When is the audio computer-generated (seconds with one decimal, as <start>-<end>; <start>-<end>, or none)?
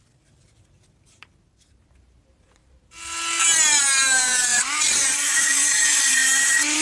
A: 0.0-2.6; 3.8-6.8